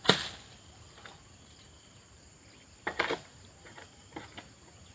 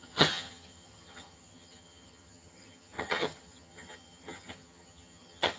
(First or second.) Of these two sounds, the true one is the first